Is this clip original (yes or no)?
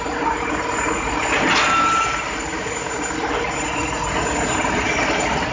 yes